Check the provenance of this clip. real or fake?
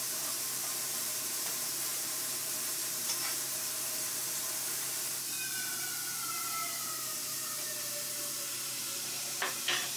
fake